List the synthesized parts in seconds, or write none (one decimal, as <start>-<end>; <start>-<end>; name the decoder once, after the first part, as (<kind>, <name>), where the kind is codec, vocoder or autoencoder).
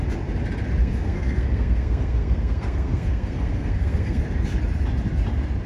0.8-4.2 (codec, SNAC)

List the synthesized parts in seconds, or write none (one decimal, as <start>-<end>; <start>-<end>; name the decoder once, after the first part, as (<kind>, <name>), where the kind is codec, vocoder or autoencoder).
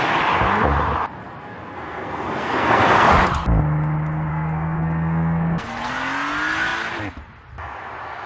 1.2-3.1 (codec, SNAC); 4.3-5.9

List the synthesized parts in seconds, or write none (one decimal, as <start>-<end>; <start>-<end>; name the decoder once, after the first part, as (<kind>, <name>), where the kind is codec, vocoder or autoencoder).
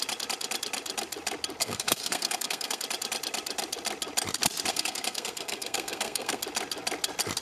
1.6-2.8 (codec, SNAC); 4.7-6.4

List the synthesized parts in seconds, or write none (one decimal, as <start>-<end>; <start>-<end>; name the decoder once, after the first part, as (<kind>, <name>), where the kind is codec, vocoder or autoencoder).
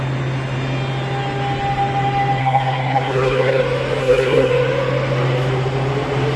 2.4-3.6 (codec, SNAC); 4.0-4.5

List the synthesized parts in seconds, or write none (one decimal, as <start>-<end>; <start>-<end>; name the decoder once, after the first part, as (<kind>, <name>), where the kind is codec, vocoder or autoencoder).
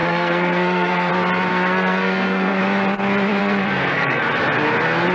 0.0-1.1 (codec, SNAC); 1.5-2.6; 3.4-4.2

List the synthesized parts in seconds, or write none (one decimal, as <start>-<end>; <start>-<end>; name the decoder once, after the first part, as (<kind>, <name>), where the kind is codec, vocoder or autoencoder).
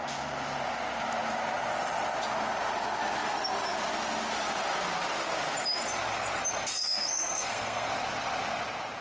6.7-7.9 (codec, SNAC)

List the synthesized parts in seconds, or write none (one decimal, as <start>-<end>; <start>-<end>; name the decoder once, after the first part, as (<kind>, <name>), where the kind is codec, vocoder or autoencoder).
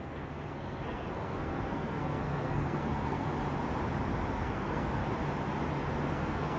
0.0-3.3 (codec, SNAC); 4.3-5.0; 6.1-6.6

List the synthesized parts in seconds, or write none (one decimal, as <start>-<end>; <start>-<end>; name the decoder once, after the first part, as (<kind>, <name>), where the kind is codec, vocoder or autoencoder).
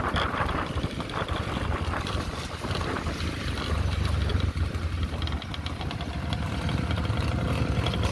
none